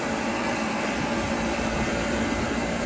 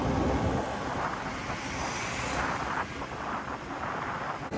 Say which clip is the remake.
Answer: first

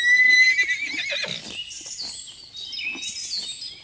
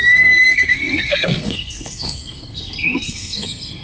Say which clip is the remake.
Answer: second